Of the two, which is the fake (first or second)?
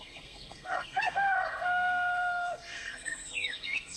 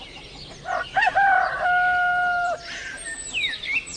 first